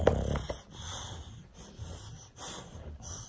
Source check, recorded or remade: recorded